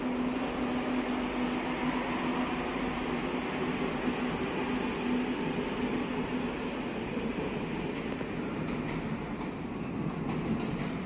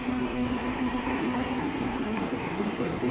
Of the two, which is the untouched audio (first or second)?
first